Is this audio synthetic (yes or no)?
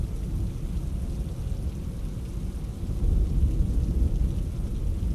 no